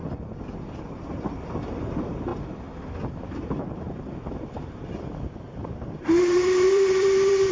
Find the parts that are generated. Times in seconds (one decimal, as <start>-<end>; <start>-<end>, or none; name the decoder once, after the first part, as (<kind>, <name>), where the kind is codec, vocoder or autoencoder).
0.8-2.3 (vocoder, BigVGAN v2); 3.1-7.5